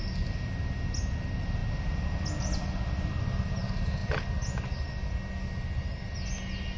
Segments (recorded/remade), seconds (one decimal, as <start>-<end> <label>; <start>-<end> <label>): 0.0-0.6 remade; 0.6-6.8 recorded

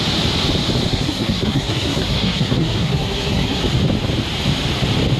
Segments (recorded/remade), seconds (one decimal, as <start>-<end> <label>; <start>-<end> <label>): 0.0-0.9 recorded; 0.9-3.6 remade; 3.6-5.2 recorded